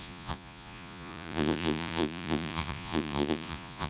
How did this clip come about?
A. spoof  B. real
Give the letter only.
A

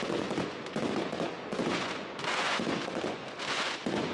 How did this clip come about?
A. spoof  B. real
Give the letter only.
A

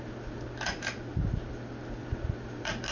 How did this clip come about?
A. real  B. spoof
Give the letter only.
A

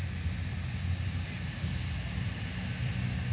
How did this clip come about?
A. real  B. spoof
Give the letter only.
A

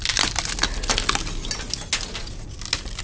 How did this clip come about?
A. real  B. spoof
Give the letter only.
A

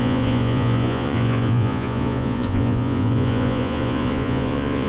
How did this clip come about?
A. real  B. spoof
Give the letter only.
B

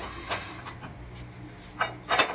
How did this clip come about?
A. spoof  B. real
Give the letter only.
B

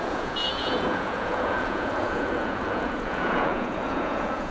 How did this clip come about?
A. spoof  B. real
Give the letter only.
A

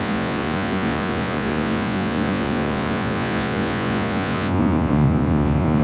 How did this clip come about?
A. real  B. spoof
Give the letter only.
B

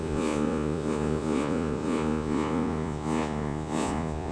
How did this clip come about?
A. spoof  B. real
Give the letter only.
A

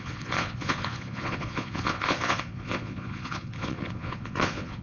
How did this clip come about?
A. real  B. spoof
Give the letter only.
B